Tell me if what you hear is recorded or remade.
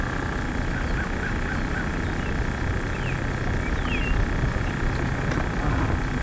recorded